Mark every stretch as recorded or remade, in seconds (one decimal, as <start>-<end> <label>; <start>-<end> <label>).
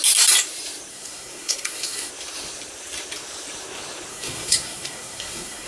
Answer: 0.0-0.9 recorded; 0.9-2.1 remade; 2.1-4.1 recorded; 4.1-5.7 remade